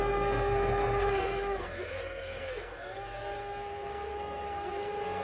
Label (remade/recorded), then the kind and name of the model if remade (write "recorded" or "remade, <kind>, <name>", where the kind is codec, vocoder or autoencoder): remade, codec, SNAC